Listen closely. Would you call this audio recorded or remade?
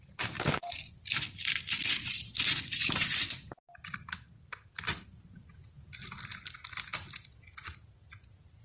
recorded